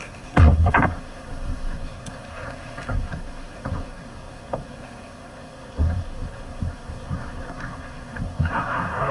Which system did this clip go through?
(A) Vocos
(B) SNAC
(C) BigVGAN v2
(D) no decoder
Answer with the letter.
B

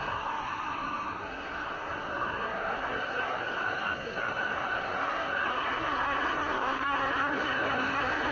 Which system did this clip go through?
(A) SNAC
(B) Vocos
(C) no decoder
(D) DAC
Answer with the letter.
A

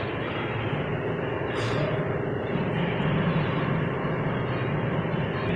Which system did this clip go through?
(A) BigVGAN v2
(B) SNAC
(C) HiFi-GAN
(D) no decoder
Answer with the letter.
D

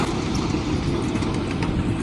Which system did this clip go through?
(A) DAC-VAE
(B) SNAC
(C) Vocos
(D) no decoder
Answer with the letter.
D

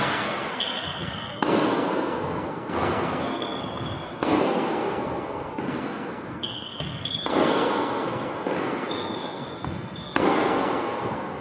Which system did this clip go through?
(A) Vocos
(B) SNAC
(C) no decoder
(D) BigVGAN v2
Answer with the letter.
B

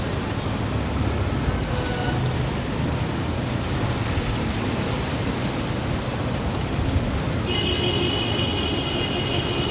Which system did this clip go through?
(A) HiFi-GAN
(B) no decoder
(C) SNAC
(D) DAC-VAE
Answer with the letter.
B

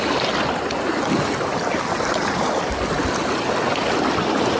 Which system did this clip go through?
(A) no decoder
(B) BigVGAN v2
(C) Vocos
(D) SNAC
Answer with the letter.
A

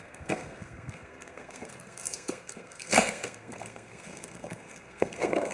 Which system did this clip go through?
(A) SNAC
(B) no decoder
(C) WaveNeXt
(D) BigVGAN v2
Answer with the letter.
A